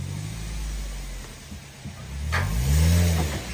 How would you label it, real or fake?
real